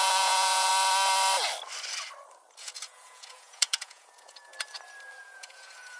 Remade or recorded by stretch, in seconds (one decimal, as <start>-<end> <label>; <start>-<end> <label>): 0.0-0.7 remade; 0.7-2.6 recorded; 2.6-4.5 remade; 4.5-5.2 recorded; 5.2-6.0 remade